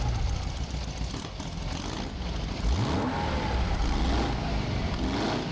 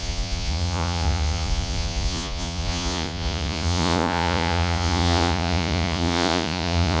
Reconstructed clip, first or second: second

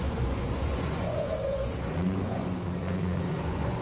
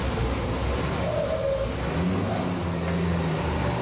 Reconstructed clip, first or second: first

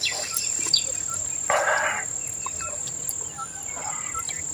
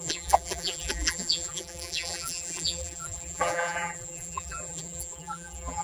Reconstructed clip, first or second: second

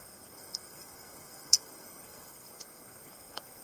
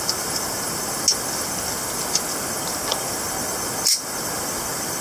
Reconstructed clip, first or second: first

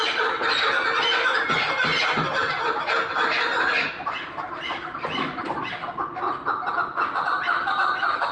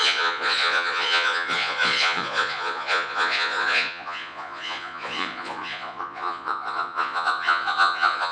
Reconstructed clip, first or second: second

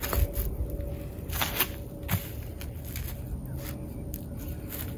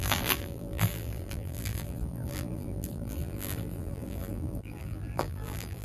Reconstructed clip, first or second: second